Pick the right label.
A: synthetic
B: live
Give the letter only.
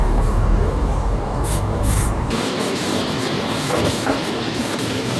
A